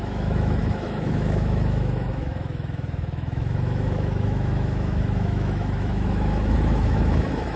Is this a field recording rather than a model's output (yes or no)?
no